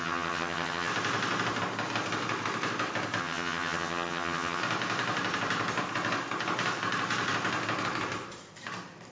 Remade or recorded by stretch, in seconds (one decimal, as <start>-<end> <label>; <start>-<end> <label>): 0.0-0.9 remade; 0.9-3.2 recorded; 3.2-4.6 remade; 4.6-9.1 recorded

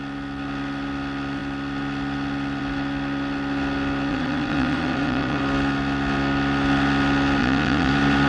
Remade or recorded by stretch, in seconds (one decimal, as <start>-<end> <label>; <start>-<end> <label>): 0.0-4.1 recorded; 4.1-5.4 remade; 5.4-7.4 recorded; 7.4-7.9 remade; 7.9-8.3 recorded

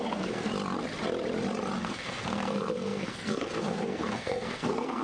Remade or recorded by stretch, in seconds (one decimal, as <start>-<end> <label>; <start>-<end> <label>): 0.0-0.5 remade; 0.5-1.8 recorded; 1.8-5.0 remade

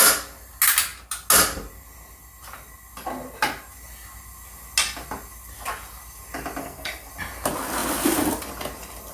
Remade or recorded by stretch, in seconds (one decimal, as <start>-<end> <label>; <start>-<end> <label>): 0.0-6.6 recorded; 6.6-7.1 remade; 7.1-9.1 recorded